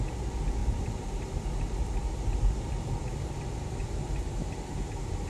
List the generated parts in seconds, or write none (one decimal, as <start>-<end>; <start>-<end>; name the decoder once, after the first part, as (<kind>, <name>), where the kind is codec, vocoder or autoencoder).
none